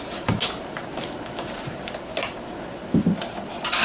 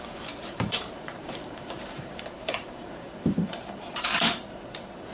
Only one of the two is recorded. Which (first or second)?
first